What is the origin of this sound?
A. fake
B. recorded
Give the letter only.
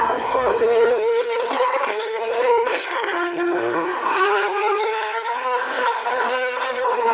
A